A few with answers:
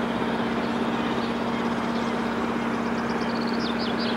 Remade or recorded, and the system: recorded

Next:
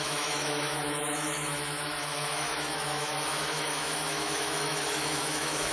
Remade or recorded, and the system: remade, autoencoder, DAC-VAE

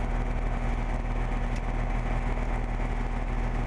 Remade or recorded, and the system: recorded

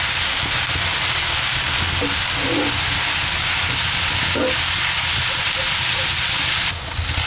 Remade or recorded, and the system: recorded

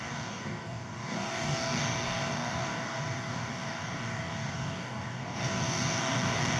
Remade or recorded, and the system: remade, codec, DAC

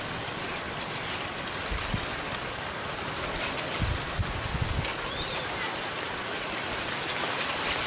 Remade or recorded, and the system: recorded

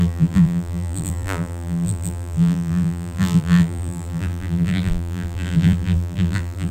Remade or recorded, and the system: remade, vocoder, BigVGAN v2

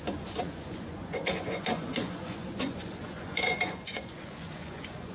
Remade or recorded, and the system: remade, vocoder, Vocos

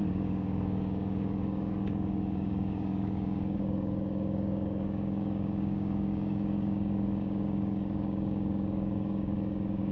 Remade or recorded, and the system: remade, codec, DAC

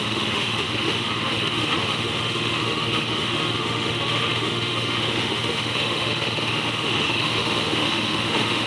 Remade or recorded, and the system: remade, autoencoder, DAC-VAE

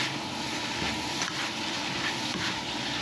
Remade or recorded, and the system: recorded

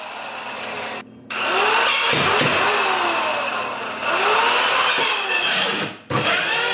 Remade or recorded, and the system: recorded